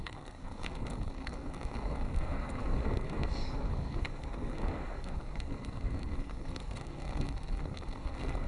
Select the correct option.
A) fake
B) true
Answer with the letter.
A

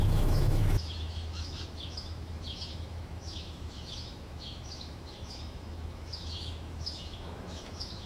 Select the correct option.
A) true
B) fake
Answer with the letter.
B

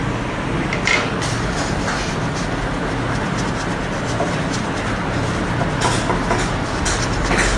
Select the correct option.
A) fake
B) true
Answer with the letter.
B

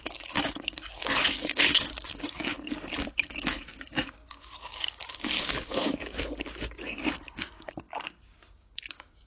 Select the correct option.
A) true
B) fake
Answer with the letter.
B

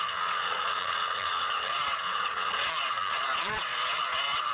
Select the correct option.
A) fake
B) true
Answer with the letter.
A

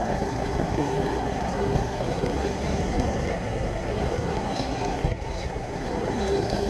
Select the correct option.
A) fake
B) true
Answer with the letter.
A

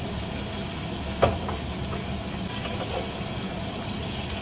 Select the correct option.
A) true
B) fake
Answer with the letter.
A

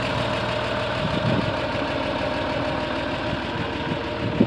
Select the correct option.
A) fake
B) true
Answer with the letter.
B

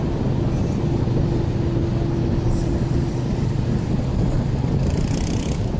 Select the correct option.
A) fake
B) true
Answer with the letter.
B